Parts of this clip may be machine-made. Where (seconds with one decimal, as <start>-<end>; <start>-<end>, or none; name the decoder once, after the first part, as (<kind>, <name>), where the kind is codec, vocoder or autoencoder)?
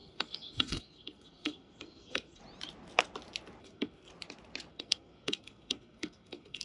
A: 0.0-2.4 (codec, SNAC); 3.6-4.1; 4.7-6.6